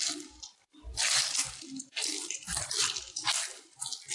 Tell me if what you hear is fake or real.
fake